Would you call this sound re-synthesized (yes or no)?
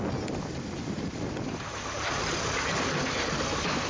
no